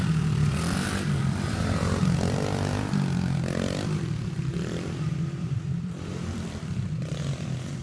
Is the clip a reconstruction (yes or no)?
yes